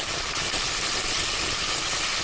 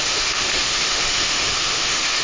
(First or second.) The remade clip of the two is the second